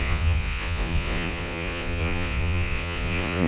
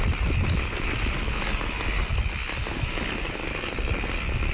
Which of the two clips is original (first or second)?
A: second